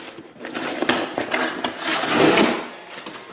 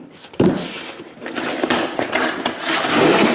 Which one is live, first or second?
first